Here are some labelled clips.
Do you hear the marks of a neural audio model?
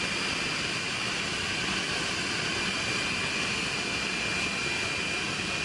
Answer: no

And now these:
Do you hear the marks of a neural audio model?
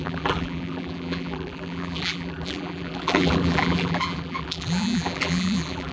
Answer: yes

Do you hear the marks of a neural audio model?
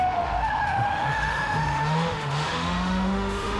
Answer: yes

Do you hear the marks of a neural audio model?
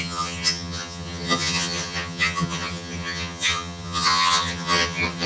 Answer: yes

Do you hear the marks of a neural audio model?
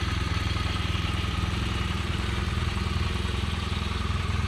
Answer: yes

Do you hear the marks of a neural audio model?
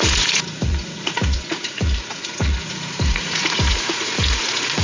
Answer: yes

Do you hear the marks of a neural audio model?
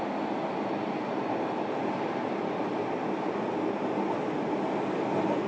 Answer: no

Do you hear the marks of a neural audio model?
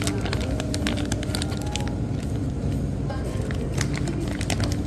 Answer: no